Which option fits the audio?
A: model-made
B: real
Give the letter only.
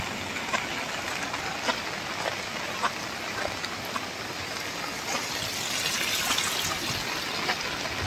B